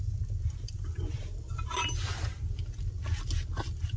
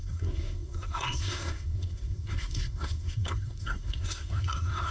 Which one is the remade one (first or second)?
second